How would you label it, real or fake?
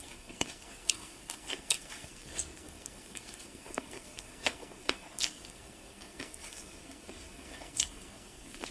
fake